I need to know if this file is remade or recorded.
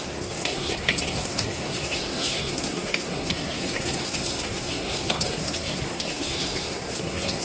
remade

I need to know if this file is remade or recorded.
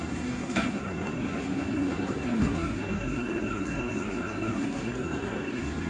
remade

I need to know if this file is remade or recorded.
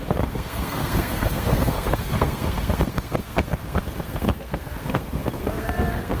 remade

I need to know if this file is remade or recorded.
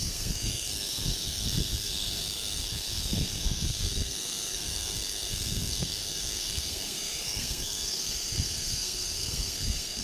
remade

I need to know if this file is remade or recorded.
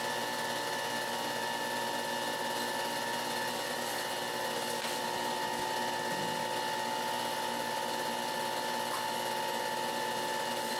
recorded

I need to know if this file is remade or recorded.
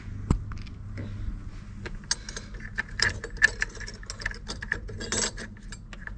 recorded